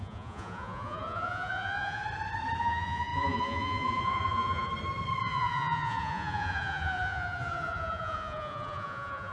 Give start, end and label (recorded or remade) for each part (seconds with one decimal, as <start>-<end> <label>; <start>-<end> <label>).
0.0-2.0 remade; 2.0-2.6 recorded; 2.6-4.7 remade; 4.7-5.2 recorded; 5.2-9.3 remade